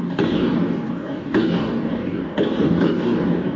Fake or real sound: fake